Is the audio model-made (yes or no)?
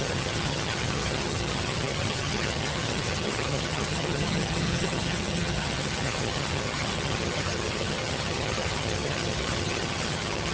yes